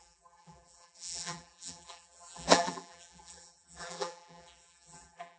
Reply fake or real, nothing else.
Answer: fake